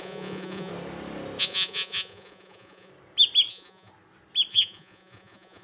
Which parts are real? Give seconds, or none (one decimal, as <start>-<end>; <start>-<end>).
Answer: 0.7-1.4; 2.9-3.5; 3.9-4.5